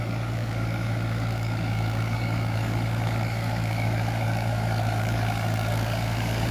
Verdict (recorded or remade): remade